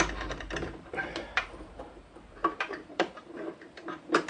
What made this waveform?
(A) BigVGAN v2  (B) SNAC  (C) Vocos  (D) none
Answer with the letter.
A